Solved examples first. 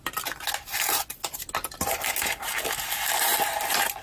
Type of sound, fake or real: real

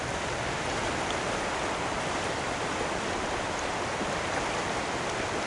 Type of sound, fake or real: fake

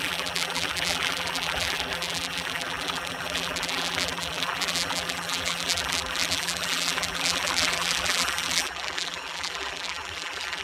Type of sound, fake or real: fake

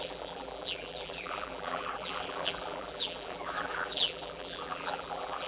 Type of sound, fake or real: fake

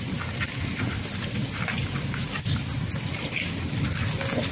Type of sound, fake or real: real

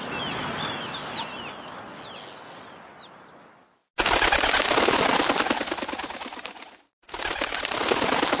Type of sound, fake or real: real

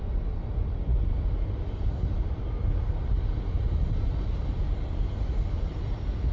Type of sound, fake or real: real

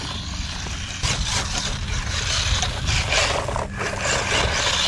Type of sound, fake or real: real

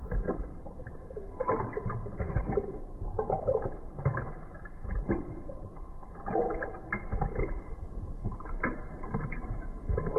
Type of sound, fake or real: fake